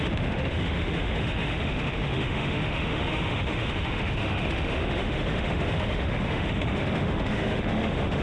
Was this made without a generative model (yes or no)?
no